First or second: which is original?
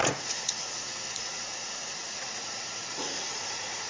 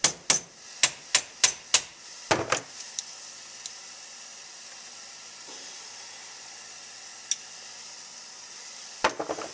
second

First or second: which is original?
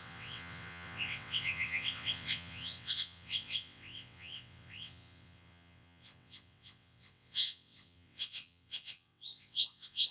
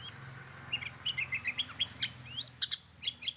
second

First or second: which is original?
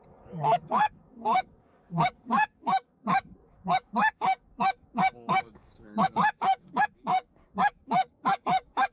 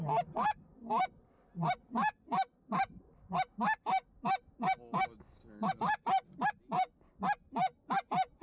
second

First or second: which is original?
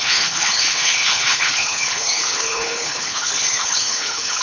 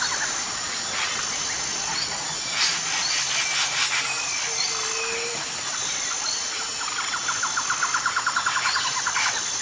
second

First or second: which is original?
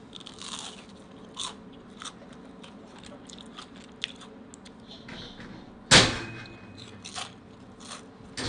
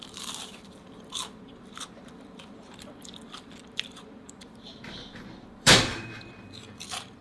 first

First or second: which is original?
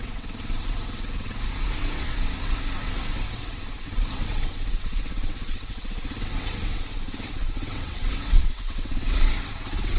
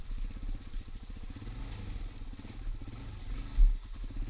second